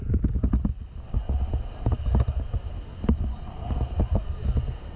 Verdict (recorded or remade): recorded